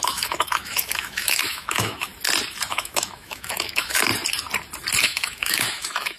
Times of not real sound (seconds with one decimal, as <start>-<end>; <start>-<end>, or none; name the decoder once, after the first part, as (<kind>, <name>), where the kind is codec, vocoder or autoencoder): 0.0-2.1 (autoencoder, DAC-VAE); 2.7-4.1; 5.0-6.2